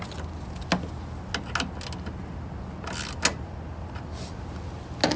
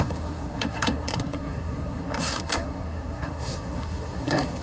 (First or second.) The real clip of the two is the first